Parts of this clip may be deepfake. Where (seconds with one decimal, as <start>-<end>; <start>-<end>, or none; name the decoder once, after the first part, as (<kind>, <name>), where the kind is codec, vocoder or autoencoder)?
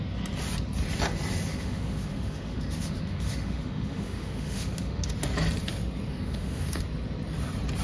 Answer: 1.5-5.1 (autoencoder, DAC-VAE); 6.1-6.8